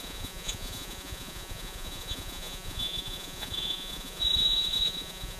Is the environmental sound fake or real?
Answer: fake